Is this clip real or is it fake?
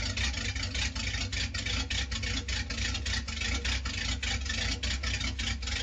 real